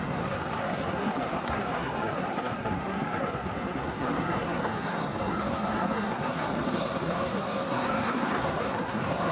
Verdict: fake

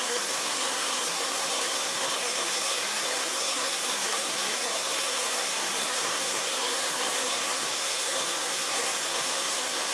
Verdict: fake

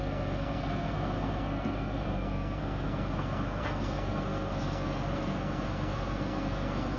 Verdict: fake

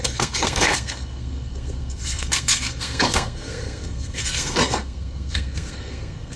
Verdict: fake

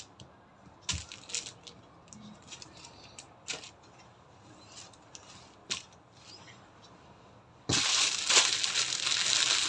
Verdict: real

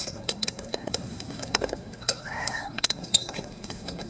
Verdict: fake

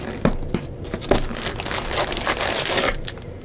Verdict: real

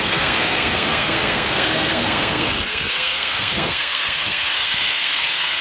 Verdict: fake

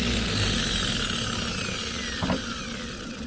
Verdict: real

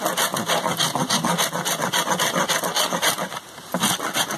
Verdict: real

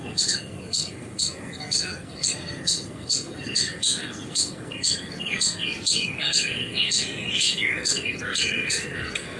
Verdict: fake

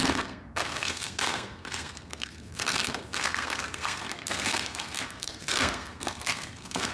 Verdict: fake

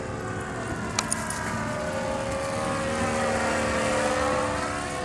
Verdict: real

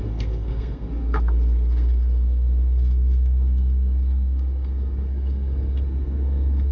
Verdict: fake